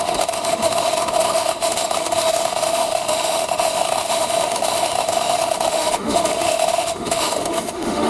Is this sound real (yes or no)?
no